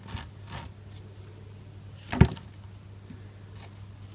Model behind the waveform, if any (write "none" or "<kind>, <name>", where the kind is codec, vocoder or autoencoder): none